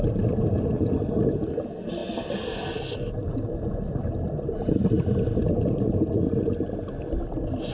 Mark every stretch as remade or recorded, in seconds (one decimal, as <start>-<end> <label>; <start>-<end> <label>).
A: 0.0-7.7 recorded